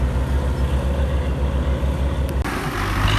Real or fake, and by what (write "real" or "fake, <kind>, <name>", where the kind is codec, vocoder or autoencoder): real